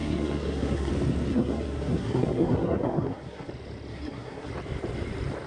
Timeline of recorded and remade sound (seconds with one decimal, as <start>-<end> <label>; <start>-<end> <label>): 0.0-0.9 remade; 0.9-1.3 recorded; 1.3-3.5 remade; 3.5-3.9 recorded; 3.9-4.5 remade; 4.5-5.5 recorded